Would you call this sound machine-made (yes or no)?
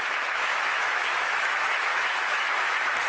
yes